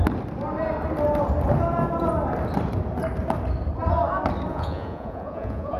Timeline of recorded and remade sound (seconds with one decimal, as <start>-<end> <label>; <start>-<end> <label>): 0.0-4.5 recorded; 4.5-5.8 remade